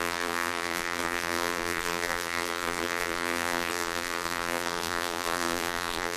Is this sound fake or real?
fake